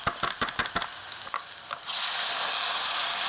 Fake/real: real